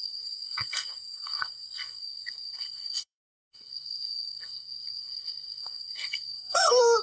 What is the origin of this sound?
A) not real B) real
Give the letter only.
A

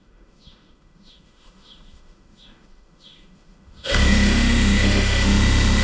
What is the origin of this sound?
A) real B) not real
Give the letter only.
B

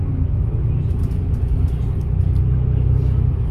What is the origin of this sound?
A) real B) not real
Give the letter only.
A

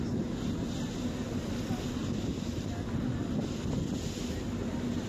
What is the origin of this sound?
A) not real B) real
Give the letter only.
B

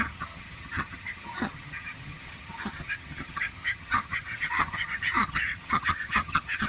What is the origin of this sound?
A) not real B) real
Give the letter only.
A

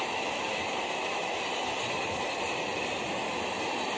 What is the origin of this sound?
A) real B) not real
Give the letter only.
A